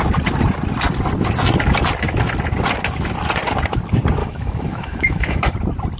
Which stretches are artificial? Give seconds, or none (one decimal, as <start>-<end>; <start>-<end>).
4.2-5.5